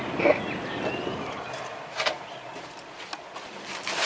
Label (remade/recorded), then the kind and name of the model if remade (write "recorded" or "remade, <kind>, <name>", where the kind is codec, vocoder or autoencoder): recorded